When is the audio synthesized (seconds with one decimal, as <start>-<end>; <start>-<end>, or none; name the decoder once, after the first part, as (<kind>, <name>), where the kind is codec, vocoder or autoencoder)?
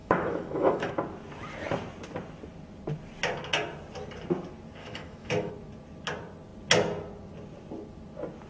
0.0-0.9 (autoencoder, DAC-VAE); 4.8-5.5